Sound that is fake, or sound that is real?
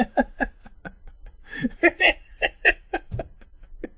fake